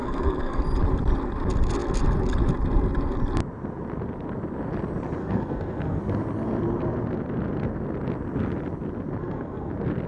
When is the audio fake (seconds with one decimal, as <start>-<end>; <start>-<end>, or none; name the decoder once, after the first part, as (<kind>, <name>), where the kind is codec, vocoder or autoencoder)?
0.0-0.6 (codec, SNAC); 5.2-6.0; 9.2-9.7